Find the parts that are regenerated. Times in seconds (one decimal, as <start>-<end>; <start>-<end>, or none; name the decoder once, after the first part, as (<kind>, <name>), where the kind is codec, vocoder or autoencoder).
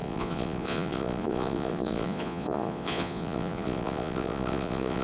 0.0-5.0 (vocoder, Vocos)